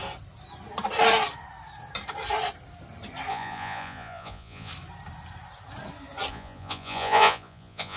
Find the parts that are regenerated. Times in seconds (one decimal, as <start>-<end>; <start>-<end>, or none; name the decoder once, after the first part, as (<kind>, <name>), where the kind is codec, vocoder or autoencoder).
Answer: 3.3-4.7 (vocoder, Vocos); 6.3-8.0